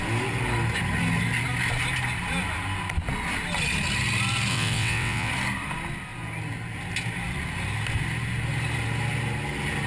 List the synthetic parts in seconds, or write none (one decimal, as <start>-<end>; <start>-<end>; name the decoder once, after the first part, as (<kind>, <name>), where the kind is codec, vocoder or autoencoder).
4.5-5.3 (vocoder, WaveNeXt)